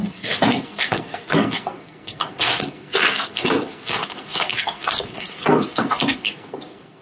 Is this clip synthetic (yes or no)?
yes